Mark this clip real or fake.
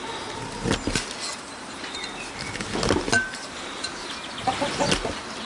real